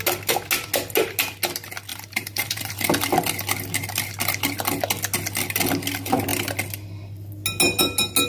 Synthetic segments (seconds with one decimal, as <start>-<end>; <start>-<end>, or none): 1.9-2.7